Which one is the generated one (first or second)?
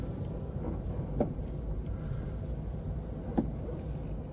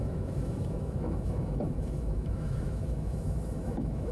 second